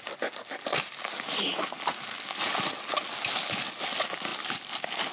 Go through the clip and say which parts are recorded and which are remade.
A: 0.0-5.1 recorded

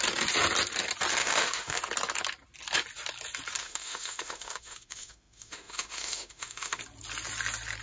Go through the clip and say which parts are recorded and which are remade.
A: 0.0-1.2 recorded; 1.2-1.8 remade; 1.8-3.6 recorded; 3.6-6.8 remade; 6.8-7.8 recorded

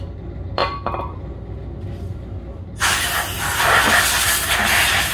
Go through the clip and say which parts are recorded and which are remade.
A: 0.0-5.1 recorded

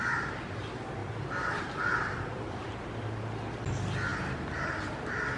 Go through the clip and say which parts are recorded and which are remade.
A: 0.0-5.4 recorded

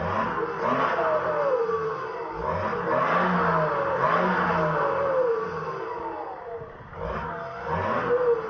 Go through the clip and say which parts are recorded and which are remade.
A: 0.0-8.5 recorded

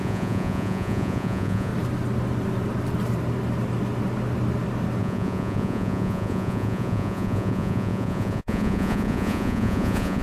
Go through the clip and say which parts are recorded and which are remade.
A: 0.0-1.7 remade; 1.7-5.0 recorded; 5.0-10.2 remade

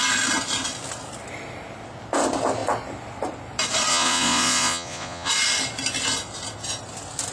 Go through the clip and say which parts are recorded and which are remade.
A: 0.0-3.9 recorded; 3.9-5.3 remade; 5.3-7.3 recorded